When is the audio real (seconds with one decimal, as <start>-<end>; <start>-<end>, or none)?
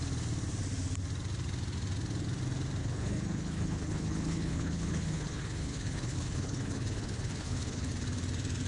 0.0-2.8; 7.9-8.7